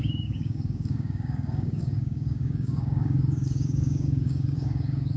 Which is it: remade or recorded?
remade